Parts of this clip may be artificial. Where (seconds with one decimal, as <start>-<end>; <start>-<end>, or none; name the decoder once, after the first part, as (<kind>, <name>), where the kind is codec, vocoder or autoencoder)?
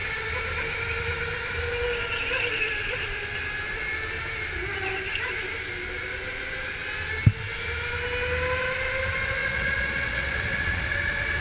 9.4-10.9 (vocoder, Vocos)